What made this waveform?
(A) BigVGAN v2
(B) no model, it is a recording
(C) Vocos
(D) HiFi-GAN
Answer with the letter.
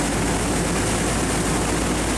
B